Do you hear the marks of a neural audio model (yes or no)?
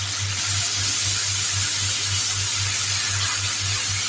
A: no